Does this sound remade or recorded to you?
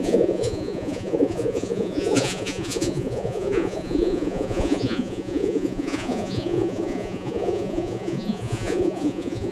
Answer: remade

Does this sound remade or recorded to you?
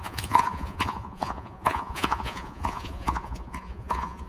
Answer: remade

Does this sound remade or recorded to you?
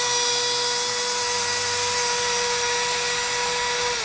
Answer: recorded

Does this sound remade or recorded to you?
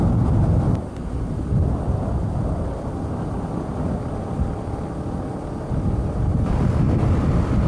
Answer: recorded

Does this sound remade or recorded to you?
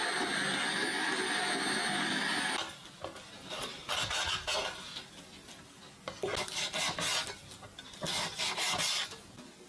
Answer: recorded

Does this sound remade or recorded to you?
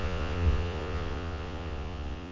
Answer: remade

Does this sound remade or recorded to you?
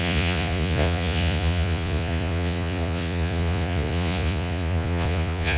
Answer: remade